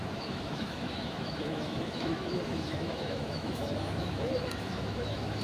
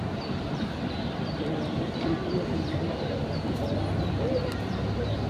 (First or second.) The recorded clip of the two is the second